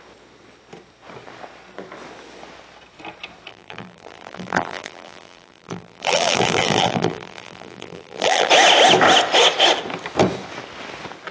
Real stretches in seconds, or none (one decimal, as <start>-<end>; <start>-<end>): 0.0-3.5; 8.5-11.3